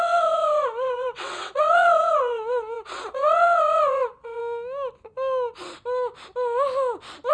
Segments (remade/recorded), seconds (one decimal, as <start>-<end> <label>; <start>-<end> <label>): 0.0-4.4 remade; 4.4-7.3 recorded